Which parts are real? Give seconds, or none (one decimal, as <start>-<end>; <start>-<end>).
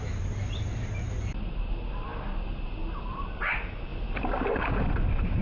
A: 0.0-5.4